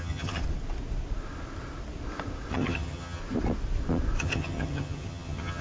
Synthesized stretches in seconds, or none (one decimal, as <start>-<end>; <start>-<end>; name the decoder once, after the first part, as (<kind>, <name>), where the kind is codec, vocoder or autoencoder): 0.0-0.4 (vocoder, HiFi-GAN); 2.5-3.2; 4.2-5.6